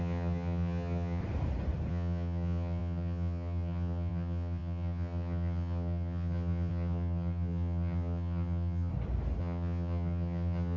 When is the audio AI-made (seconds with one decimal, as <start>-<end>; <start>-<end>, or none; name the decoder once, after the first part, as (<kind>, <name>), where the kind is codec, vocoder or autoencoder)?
0.0-1.2 (vocoder, HiFi-GAN); 1.9-8.9; 9.4-10.8